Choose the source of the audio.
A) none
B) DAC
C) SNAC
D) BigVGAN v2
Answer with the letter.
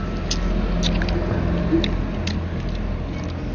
A